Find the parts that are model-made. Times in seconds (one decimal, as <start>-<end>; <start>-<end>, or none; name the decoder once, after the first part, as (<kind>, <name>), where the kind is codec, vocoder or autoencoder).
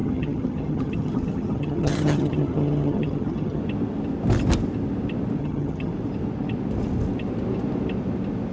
0.0-3.6 (vocoder, HiFi-GAN); 5.4-5.9